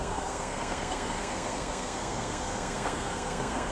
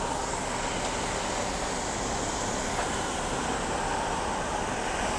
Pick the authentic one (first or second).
second